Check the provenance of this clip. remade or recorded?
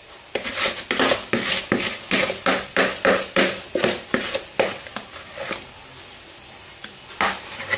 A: recorded